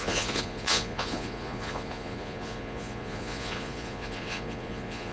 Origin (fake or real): fake